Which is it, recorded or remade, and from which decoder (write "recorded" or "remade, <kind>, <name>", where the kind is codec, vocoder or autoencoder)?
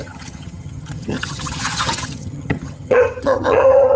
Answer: remade, vocoder, HiFi-GAN